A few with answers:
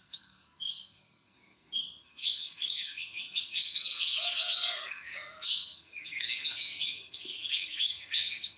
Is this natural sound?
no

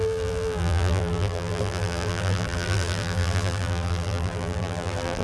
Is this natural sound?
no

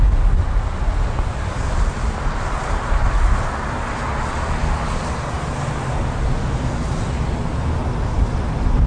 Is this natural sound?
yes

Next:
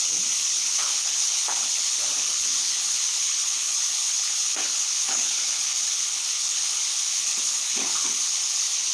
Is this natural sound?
no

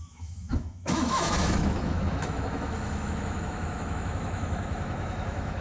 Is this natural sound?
no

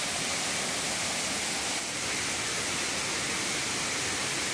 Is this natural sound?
yes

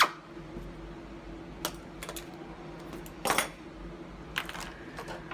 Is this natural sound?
yes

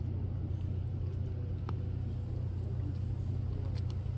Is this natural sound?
yes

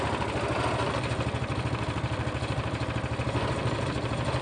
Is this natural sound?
yes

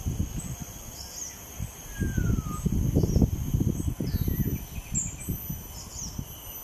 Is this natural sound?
yes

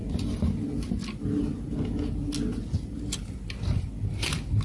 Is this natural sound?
yes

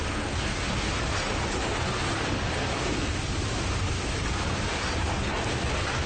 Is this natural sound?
yes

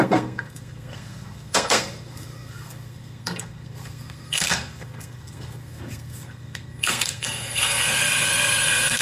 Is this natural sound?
no